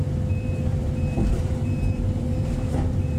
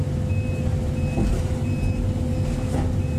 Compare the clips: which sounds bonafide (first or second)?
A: second